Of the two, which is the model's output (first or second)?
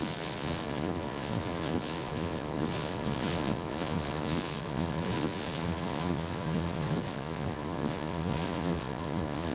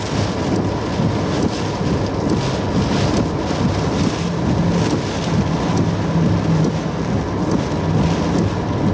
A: first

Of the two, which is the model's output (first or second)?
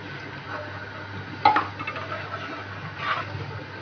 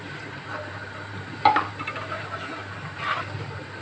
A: second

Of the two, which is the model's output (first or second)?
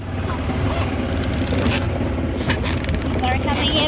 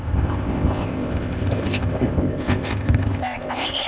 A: second